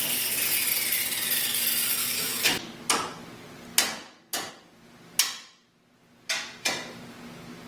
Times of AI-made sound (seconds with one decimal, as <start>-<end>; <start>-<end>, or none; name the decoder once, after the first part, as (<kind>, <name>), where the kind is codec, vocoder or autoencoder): 2.0-2.6 (autoencoder, DAC-VAE)